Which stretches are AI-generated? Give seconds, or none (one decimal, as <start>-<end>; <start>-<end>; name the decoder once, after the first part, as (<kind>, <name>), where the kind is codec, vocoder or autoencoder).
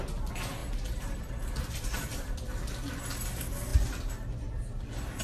0.6-2.4 (vocoder, BigVGAN v2)